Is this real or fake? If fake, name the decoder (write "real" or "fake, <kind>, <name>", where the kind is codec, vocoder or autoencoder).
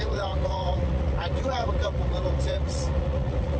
fake, vocoder, Vocos